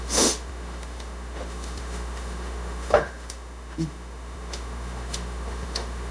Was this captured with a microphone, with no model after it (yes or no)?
no